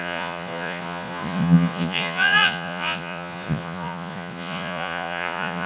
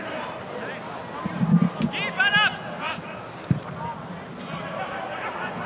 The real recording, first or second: second